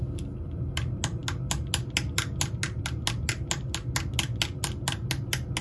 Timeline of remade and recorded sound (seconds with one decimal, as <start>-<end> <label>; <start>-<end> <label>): 0.0-5.6 recorded